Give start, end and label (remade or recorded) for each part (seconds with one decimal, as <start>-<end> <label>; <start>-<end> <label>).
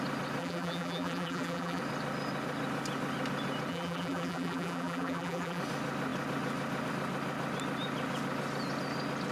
0.0-0.4 recorded; 0.4-1.8 remade; 1.8-3.7 recorded; 3.7-5.6 remade; 5.6-9.3 recorded